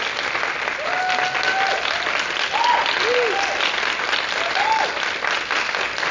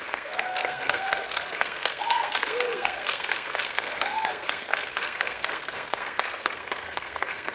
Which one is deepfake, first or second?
second